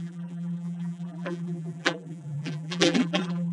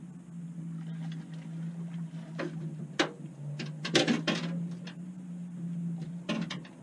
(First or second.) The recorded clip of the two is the second